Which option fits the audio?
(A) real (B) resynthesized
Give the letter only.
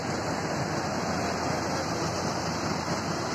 A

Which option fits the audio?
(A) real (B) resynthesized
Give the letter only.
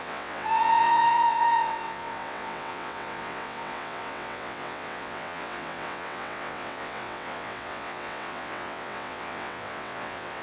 B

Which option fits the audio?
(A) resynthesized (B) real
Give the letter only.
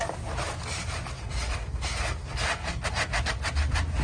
B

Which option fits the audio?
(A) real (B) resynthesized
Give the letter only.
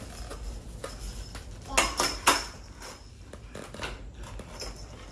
A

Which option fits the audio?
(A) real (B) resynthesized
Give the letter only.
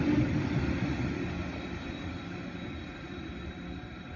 A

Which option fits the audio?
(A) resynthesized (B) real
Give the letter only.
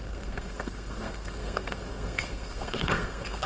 A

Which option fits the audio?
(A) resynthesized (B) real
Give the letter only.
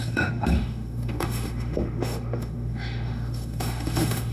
A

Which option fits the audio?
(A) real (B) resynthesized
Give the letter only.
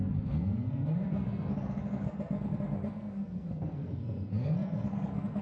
B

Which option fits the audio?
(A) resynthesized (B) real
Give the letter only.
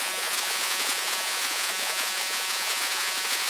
A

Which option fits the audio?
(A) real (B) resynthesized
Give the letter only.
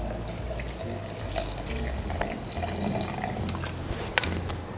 A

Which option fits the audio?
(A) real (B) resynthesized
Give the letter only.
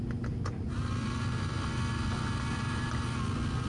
A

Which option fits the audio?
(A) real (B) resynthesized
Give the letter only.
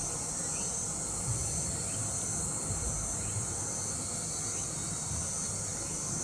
A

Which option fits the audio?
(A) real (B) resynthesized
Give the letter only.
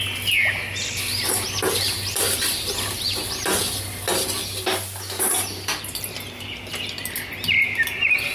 A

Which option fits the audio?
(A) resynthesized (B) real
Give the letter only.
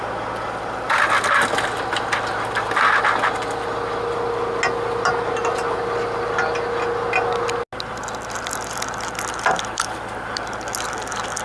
B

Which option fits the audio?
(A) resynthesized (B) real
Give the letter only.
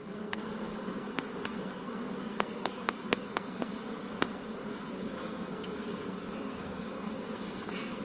A